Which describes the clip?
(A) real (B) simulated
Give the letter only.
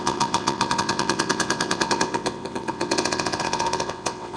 B